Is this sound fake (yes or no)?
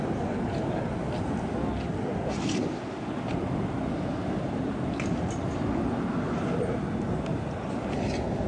no